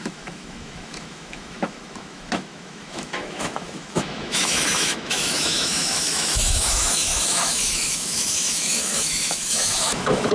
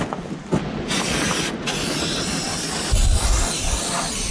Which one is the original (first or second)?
second